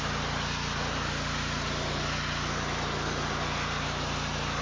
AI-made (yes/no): no